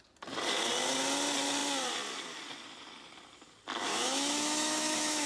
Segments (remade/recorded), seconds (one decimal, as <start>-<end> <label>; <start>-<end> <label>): 0.0-3.9 recorded; 3.9-5.3 remade